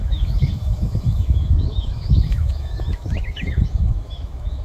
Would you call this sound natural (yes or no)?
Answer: no